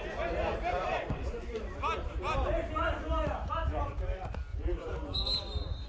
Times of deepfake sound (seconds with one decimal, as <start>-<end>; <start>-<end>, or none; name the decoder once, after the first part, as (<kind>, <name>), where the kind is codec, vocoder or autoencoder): 0.9-1.5 (vocoder, Vocos); 4.5-5.4